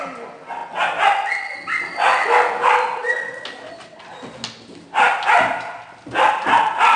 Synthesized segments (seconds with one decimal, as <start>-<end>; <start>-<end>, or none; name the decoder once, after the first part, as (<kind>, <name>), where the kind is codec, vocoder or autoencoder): none

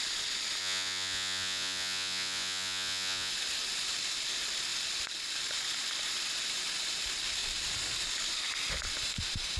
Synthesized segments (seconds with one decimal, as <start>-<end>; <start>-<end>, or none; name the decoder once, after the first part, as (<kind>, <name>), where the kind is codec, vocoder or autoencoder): 0.6-3.3 (vocoder, Vocos)

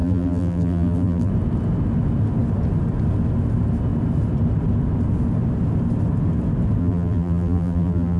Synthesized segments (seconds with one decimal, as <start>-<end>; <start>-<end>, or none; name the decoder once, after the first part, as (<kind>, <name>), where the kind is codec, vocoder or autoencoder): 0.0-1.3 (vocoder, BigVGAN v2); 6.8-8.2

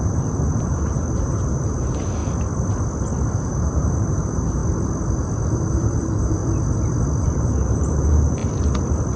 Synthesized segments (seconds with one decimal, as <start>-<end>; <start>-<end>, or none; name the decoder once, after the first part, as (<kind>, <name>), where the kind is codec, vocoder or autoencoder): 0.0-2.2 (vocoder, BigVGAN v2); 3.4-4.6; 5.5-6.4; 7.2-8.4

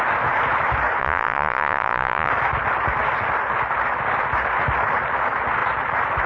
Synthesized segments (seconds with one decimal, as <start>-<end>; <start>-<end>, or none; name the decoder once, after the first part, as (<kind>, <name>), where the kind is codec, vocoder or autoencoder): 1.0-2.3 (vocoder, Vocos)

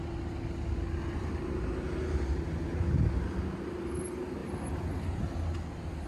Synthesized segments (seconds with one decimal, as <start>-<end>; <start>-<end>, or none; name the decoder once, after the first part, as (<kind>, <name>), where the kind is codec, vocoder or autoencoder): none